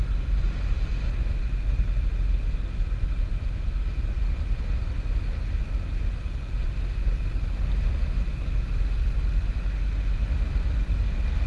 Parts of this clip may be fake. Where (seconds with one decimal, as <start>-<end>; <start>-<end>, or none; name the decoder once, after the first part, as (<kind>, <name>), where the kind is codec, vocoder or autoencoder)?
none